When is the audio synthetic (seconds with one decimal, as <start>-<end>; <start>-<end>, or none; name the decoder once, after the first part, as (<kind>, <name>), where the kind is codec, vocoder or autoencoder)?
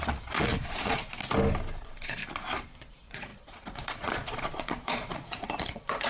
0.0-1.0 (vocoder, Vocos); 1.8-2.2; 2.9-6.1